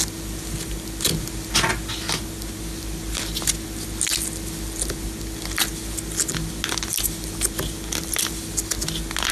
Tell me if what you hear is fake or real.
real